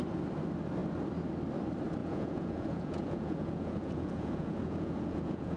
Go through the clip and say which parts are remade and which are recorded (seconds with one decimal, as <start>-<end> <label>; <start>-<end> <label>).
0.0-2.0 recorded; 2.0-5.6 remade